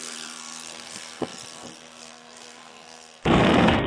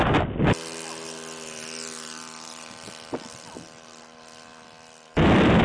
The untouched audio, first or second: second